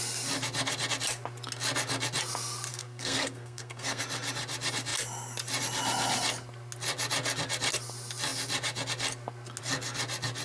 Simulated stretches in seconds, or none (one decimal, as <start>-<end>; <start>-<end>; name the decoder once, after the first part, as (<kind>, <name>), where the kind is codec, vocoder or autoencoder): 2.7-4.0 (codec, SNAC)